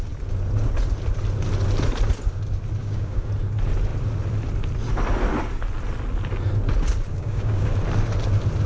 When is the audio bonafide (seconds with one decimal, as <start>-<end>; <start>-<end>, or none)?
0.0-2.8; 3.3-7.1; 7.7-8.7